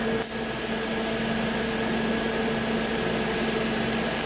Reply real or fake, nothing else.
real